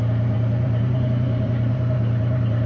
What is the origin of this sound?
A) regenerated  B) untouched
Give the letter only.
A